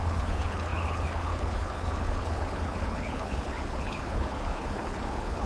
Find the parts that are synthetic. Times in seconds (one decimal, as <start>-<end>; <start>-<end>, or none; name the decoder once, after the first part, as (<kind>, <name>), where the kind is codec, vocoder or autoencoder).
0.0-5.5 (codec, HILCodec)